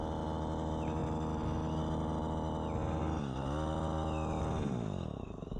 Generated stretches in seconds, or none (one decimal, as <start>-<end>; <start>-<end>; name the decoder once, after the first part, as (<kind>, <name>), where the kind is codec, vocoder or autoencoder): none